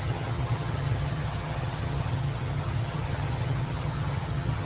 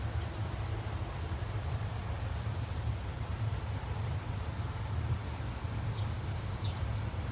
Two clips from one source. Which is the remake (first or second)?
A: first